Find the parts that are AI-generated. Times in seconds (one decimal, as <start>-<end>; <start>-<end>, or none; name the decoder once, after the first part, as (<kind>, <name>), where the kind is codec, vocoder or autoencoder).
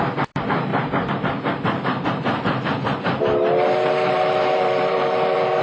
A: 0.0-0.7 (vocoder, BigVGAN v2); 4.1-5.6